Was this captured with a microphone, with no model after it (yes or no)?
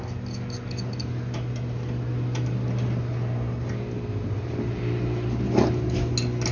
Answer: yes